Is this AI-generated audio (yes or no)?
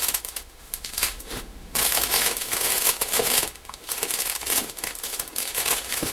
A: yes